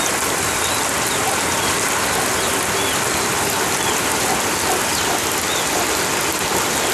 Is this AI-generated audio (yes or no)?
no